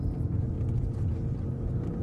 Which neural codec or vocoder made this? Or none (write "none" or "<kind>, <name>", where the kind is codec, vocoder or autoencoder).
none